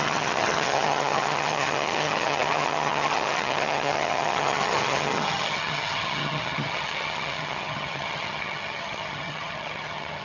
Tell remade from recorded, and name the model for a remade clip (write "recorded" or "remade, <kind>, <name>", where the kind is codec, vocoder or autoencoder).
remade, vocoder, HiFi-GAN